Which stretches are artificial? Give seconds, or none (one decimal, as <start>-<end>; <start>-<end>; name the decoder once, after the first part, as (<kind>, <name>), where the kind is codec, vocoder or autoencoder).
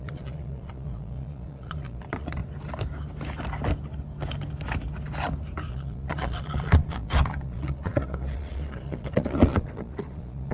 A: 0.0-2.4 (vocoder, Vocos); 5.7-10.5